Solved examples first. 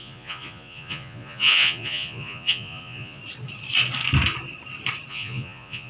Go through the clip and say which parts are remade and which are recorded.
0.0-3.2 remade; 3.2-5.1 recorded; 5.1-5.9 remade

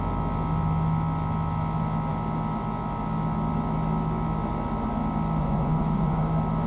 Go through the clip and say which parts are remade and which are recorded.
0.0-5.4 recorded; 5.4-6.2 remade; 6.2-6.7 recorded

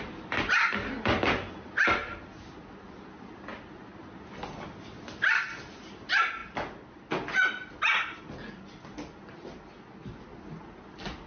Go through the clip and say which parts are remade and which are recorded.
0.0-11.3 recorded

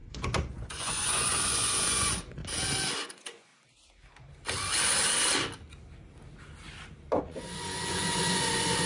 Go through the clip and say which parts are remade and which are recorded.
0.0-2.4 remade; 2.4-2.9 recorded; 2.9-3.5 remade; 3.5-7.2 recorded; 7.2-8.9 remade

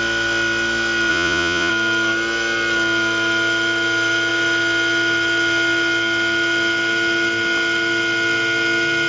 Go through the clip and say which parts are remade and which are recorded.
0.0-1.1 recorded; 1.1-1.7 remade; 1.7-9.1 recorded

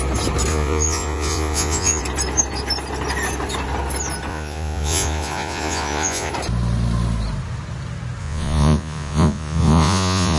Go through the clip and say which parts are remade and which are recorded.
0.0-0.5 recorded; 0.5-2.0 remade; 2.0-4.3 recorded; 4.3-6.3 remade; 6.3-8.2 recorded; 8.2-10.4 remade

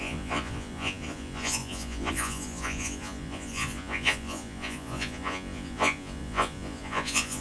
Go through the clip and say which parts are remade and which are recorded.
0.0-7.4 remade

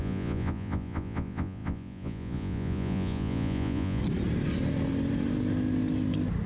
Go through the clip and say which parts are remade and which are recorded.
0.0-4.0 remade; 4.0-6.5 recorded